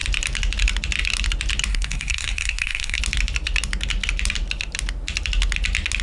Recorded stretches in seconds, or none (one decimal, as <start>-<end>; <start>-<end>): 0.0-1.7; 3.0-6.0